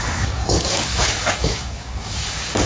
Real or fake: fake